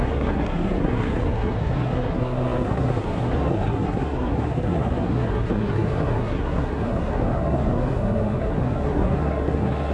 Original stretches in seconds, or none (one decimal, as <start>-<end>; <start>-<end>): none